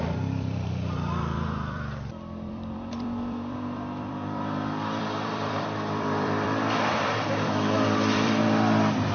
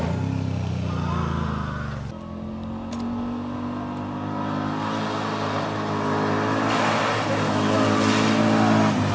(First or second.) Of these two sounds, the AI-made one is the first